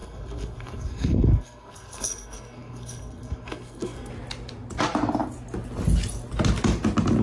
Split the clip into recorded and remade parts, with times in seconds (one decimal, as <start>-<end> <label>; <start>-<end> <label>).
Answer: 0.0-4.1 remade; 4.1-7.2 recorded